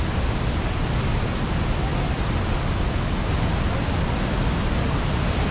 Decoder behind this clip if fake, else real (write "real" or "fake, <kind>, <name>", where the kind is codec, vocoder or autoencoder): real